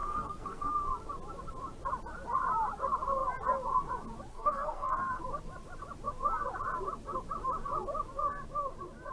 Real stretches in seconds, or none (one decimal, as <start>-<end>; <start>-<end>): 0.7-4.3; 5.2-9.1